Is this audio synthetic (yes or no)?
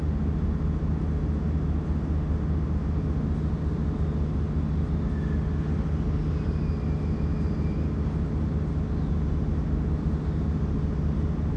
no